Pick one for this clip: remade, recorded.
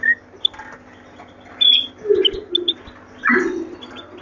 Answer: recorded